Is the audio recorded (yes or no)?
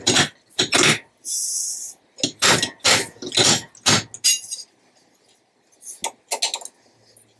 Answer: yes